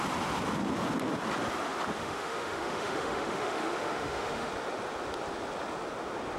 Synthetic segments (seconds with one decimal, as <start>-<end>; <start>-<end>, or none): 2.0-4.5

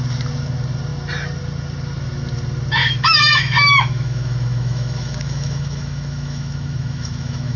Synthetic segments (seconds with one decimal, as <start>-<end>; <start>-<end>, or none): 2.8-7.6

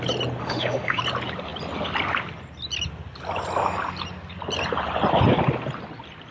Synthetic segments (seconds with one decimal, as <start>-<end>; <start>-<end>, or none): 0.4-1.0